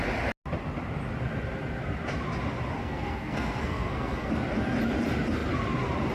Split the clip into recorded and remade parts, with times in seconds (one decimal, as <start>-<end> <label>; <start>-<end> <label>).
0.0-2.8 recorded; 2.8-4.3 remade; 4.3-6.1 recorded